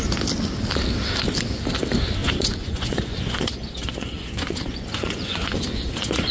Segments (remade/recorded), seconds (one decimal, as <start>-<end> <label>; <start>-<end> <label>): 0.0-2.2 recorded; 2.2-6.3 remade